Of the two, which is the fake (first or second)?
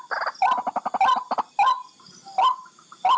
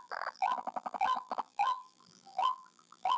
second